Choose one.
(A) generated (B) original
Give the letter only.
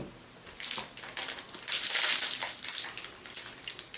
B